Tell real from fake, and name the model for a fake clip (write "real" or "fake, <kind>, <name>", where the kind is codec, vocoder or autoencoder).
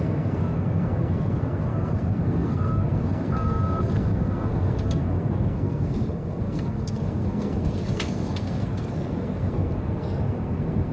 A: fake, codec, SNAC